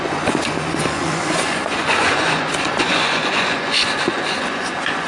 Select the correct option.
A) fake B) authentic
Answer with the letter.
A